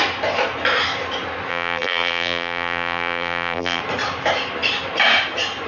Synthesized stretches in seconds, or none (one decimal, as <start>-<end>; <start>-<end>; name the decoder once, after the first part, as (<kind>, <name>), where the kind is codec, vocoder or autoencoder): 1.5-3.8 (vocoder, BigVGAN v2)